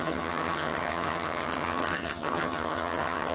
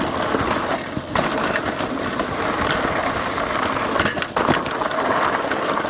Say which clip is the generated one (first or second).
first